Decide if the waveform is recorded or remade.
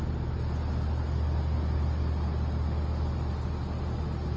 recorded